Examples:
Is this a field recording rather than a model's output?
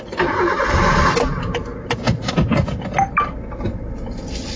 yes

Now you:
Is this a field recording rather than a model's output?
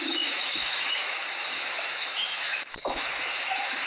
no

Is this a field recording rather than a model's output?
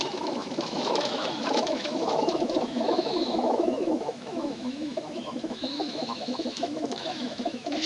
no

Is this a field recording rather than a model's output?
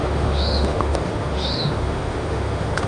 no